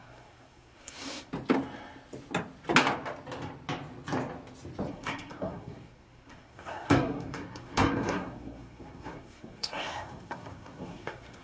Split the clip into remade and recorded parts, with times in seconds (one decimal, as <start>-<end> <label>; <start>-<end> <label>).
0.0-1.3 remade; 1.3-4.9 recorded; 4.9-11.4 remade